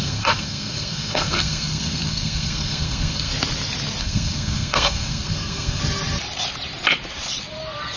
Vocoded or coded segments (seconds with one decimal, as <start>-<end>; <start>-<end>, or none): 0.0-3.3; 4.0-5.8